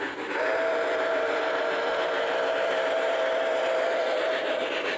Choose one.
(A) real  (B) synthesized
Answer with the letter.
B